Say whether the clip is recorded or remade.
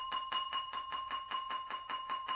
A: remade